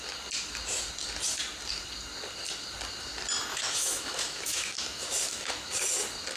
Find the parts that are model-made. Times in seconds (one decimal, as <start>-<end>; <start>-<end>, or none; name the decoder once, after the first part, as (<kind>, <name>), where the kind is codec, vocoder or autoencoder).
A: 3.5-5.7 (autoencoder, DAC-VAE)